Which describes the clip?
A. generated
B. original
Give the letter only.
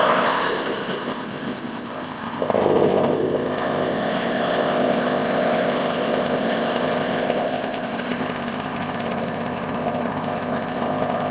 A